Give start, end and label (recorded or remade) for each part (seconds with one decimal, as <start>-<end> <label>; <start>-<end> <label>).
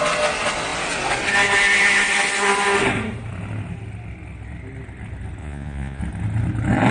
0.0-5.4 recorded; 5.4-6.0 remade; 6.0-6.9 recorded